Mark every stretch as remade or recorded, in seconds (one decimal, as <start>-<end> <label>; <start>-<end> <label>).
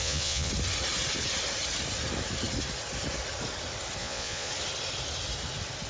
0.0-0.5 remade; 0.5-4.0 recorded; 4.0-4.5 remade; 4.5-5.9 recorded